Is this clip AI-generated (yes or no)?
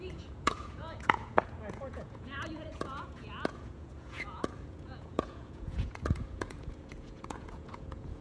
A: yes